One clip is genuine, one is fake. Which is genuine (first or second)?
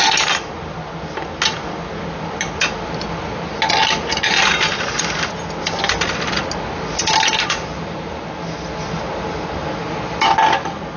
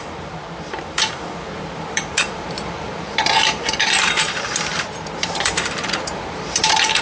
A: first